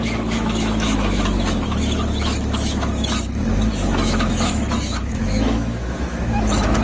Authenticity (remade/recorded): remade